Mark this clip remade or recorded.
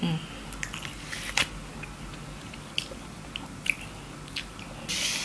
recorded